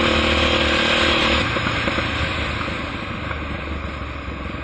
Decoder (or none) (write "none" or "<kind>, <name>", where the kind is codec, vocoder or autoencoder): none